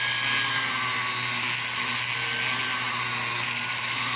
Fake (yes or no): no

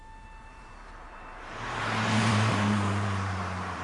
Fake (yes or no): yes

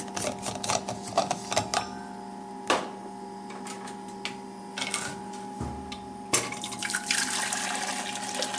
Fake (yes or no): no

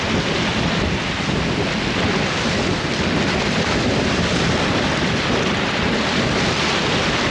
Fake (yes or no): no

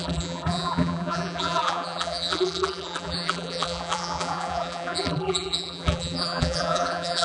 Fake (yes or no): yes